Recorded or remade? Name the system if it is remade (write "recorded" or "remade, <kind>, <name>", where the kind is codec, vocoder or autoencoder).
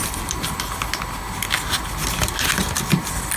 recorded